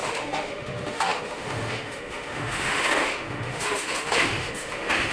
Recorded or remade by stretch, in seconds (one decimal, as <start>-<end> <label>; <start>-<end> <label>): 0.0-5.1 remade

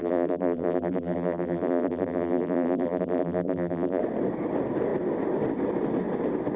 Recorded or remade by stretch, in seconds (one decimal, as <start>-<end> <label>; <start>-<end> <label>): 0.0-4.0 remade; 4.0-6.6 recorded

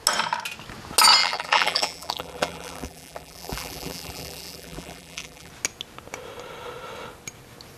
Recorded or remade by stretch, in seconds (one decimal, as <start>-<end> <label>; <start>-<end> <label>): 0.0-1.2 recorded; 1.2-5.5 remade; 5.5-7.8 recorded

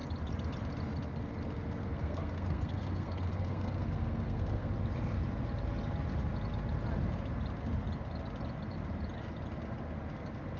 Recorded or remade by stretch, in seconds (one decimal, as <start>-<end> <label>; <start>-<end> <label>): 0.0-1.8 recorded; 1.8-4.7 remade; 4.7-10.6 recorded

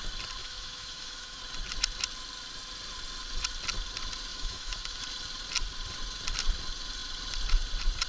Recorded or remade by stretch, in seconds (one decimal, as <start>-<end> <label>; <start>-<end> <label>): 0.0-0.4 recorded; 0.4-1.4 remade; 1.4-4.3 recorded; 4.3-5.0 remade; 5.0-8.1 recorded

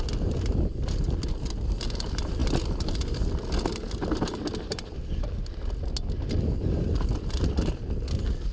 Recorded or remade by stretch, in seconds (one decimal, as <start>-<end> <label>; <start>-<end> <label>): 0.0-8.5 recorded

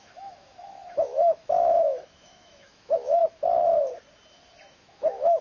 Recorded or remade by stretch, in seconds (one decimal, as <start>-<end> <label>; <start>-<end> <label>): 0.0-3.2 remade; 3.2-4.7 recorded; 4.7-5.4 remade